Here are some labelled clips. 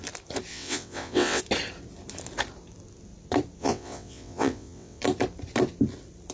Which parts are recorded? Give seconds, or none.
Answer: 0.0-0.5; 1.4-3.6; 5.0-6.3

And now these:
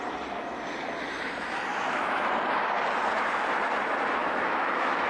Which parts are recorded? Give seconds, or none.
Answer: 0.0-1.7; 2.3-4.2

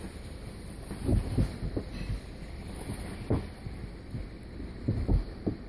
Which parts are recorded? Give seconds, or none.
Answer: 0.0-5.7